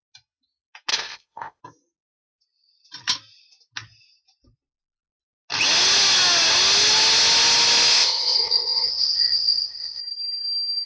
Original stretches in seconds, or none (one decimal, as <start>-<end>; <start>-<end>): 0.0-0.9; 1.6-7.9; 10.0-10.9